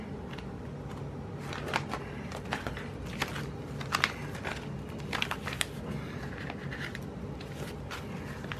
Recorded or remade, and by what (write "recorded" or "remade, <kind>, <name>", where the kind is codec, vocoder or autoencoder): recorded